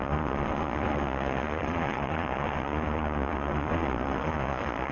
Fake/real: fake